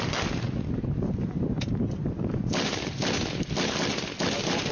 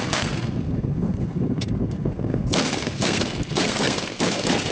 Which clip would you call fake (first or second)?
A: second